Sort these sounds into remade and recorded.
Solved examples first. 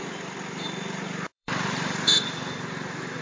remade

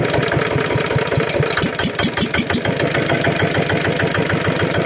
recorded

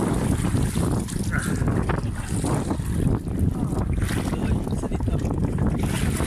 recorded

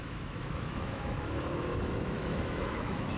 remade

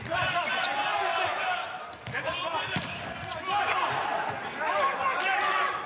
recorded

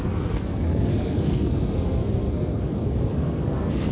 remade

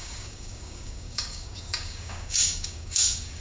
remade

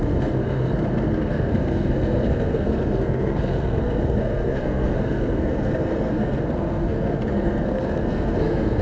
remade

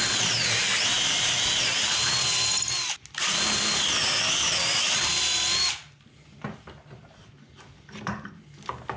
recorded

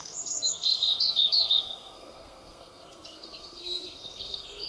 remade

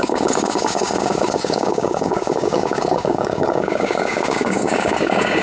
remade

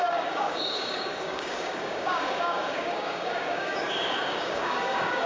remade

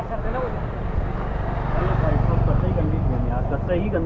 recorded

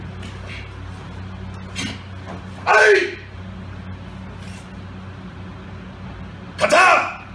recorded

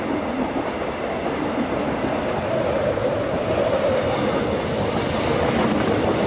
recorded